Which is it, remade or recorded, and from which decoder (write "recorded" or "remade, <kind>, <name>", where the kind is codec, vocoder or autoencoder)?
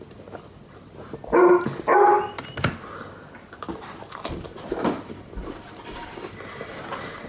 recorded